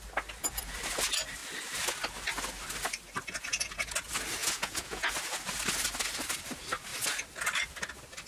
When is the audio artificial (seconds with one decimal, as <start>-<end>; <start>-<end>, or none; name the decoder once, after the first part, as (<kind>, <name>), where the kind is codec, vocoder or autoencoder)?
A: 4.4-5.1 (vocoder, Vocos)